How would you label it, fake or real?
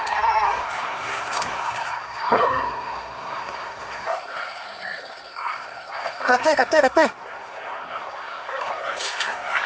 fake